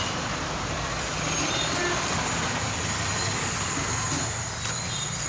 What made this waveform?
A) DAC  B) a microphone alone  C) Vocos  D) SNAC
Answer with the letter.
B